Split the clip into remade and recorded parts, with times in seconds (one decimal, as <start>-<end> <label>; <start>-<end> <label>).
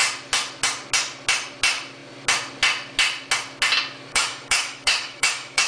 0.0-4.1 recorded; 4.1-5.7 remade